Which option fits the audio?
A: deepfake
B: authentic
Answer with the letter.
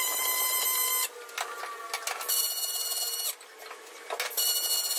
B